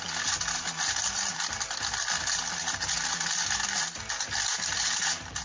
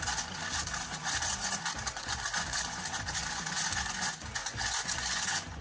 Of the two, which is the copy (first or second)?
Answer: second